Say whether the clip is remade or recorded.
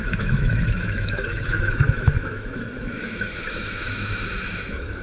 remade